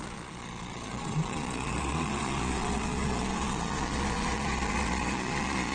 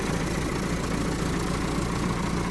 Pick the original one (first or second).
second